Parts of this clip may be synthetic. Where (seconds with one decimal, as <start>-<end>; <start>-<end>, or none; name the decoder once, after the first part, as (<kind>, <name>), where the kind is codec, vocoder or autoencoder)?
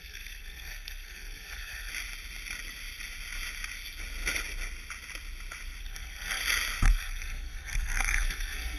0.0-1.9 (codec, SNAC); 5.8-6.4; 6.9-8.8